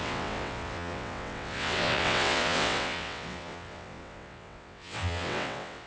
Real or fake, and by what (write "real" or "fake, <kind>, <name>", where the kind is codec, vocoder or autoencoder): fake, vocoder, WaveNeXt